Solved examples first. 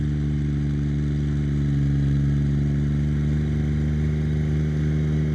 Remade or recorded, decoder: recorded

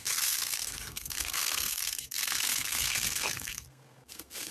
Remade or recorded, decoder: remade, codec, SNAC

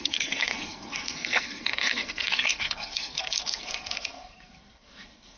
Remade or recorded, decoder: remade, codec, SNAC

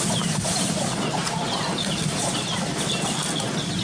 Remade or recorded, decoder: recorded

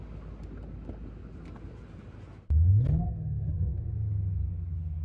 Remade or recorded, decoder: recorded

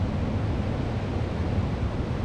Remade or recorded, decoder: recorded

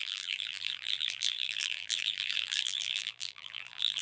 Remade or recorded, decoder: remade, vocoder, BigVGAN v2